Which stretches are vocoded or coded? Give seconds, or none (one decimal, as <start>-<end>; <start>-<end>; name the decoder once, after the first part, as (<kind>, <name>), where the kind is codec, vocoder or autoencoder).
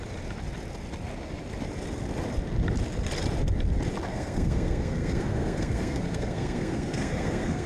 4.1-7.7 (codec, SNAC)